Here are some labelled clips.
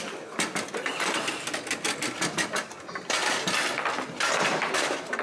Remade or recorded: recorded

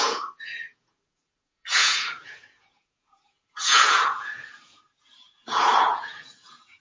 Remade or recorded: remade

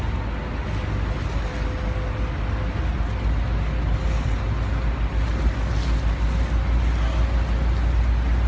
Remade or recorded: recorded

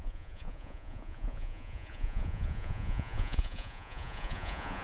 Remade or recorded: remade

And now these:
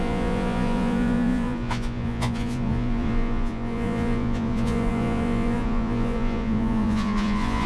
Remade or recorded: remade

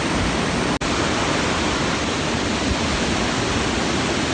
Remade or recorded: recorded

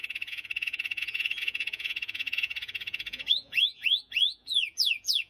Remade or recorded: remade